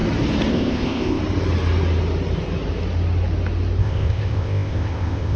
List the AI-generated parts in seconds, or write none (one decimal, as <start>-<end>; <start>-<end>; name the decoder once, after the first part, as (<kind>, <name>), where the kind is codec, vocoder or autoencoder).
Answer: 0.5-1.2 (codec, ZipCodec); 3.8-5.4